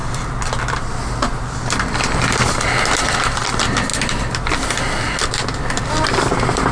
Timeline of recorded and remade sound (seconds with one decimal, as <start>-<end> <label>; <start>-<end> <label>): 0.0-6.7 recorded